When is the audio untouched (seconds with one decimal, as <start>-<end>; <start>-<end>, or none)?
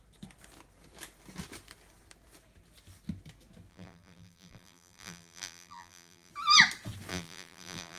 0.0-3.7; 6.3-7.1